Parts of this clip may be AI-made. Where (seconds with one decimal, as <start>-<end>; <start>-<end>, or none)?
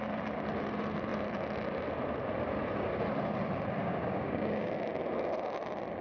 3.8-4.7